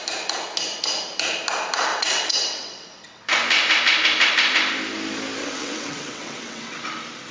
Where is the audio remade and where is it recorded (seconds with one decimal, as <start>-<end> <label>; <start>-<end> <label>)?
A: 0.0-1.9 recorded; 1.9-3.2 remade; 3.2-5.4 recorded; 5.4-6.8 remade; 6.8-7.3 recorded